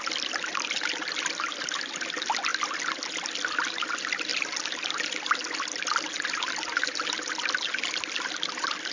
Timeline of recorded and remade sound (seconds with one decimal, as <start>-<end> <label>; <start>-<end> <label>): 0.0-8.9 recorded